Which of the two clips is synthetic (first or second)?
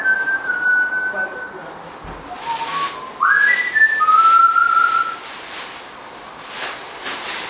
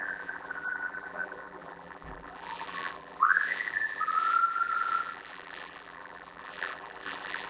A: second